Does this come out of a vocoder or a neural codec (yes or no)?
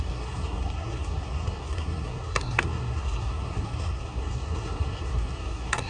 yes